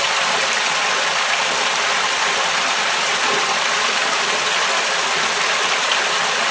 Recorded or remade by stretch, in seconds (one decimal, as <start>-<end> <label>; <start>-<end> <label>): 0.0-6.5 recorded